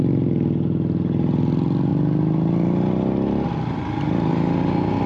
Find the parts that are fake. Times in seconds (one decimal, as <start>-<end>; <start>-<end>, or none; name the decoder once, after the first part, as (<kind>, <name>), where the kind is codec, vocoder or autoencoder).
none